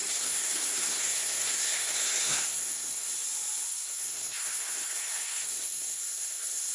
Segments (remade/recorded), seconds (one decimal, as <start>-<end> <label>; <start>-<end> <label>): 0.0-3.1 remade; 3.1-3.7 recorded; 3.7-6.7 remade